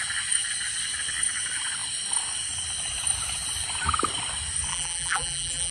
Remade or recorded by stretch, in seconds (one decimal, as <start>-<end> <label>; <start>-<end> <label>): 0.0-4.7 recorded; 4.7-5.7 remade